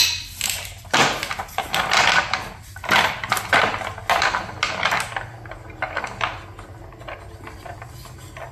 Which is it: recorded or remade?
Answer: recorded